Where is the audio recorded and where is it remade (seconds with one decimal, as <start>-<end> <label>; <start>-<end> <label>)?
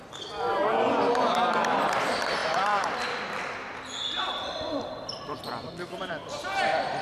0.0-2.4 recorded; 2.4-6.1 remade; 6.1-7.0 recorded